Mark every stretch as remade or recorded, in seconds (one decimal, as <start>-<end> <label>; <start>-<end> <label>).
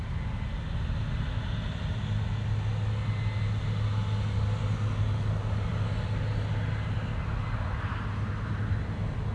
0.0-9.3 recorded